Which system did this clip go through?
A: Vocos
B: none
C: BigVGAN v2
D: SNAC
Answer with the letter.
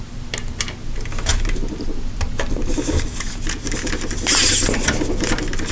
B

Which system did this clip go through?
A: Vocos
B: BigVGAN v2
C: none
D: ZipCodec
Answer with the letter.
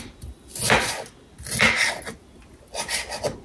C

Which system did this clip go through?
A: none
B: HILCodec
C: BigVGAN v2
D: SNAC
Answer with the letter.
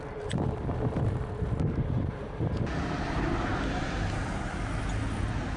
A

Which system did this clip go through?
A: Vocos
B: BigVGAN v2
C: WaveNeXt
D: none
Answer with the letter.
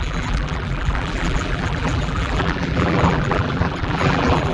B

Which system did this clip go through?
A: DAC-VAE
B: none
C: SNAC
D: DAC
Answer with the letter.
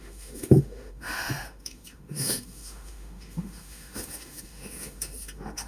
A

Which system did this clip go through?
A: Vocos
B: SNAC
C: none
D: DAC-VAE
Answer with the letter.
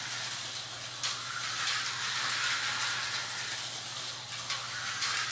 C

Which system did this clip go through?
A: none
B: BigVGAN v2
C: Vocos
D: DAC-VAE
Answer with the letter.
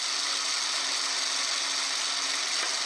A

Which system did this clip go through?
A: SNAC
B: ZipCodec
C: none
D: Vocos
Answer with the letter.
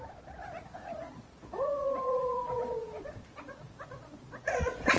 D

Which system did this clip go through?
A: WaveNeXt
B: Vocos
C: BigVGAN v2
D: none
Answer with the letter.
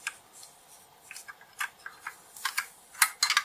D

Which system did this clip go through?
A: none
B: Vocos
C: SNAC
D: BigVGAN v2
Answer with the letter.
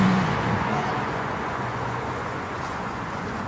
B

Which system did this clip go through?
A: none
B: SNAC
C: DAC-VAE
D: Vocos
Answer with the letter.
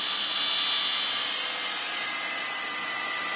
A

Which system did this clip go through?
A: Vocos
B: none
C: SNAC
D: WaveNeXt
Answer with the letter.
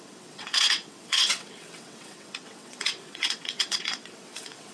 D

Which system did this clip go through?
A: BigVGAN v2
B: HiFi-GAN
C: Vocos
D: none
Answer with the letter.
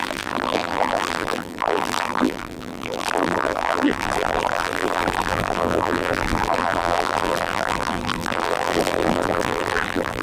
A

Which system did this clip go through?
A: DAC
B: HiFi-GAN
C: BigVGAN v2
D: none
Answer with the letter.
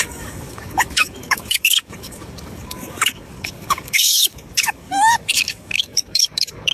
A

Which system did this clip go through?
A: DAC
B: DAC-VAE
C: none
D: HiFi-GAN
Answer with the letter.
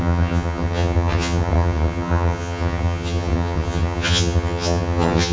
D